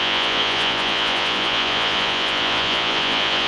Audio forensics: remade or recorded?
remade